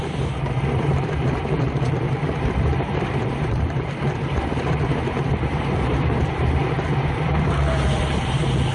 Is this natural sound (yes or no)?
no